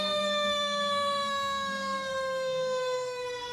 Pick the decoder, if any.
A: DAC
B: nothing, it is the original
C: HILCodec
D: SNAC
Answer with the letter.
D